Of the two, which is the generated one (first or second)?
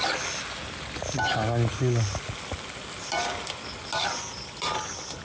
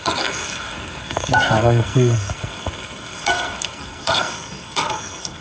second